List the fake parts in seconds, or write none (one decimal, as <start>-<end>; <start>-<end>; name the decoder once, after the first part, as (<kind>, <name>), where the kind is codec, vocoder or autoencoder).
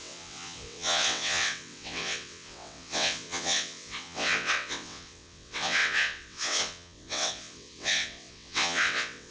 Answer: 0.0-9.3 (vocoder, WaveNeXt)